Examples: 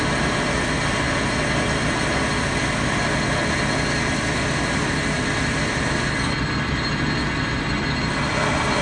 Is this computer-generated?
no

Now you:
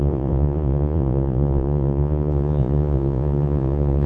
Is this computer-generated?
yes